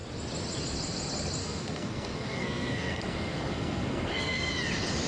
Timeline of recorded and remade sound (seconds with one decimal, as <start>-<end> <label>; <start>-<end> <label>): 0.0-1.4 recorded; 1.4-4.5 remade; 4.5-5.1 recorded